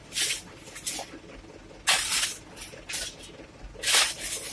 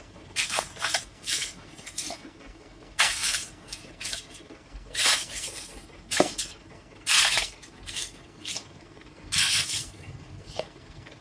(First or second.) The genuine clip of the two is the first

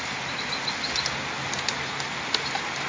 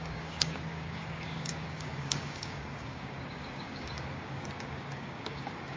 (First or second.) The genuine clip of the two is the first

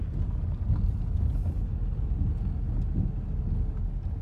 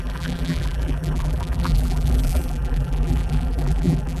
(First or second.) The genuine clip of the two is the first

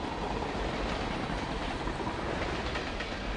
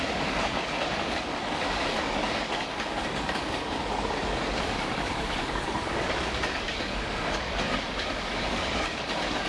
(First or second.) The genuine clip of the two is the first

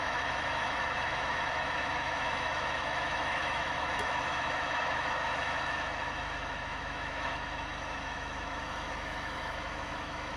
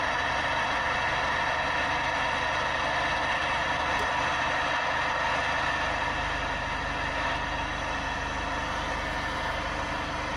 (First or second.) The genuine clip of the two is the second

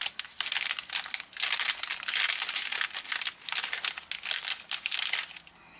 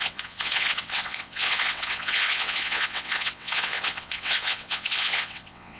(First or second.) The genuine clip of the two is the first